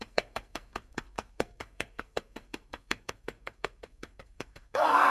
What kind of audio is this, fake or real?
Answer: fake